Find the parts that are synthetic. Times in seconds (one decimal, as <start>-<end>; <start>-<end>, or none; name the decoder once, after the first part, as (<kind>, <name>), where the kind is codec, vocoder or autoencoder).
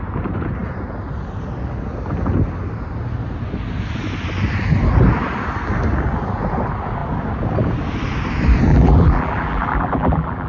8.7-10.5 (vocoder, BigVGAN v2)